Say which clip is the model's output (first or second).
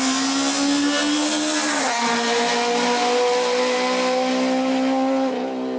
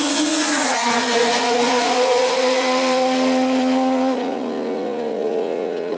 second